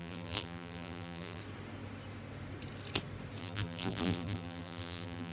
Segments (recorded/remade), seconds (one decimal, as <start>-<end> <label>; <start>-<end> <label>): 0.0-1.4 remade; 1.4-3.4 recorded; 3.4-5.3 remade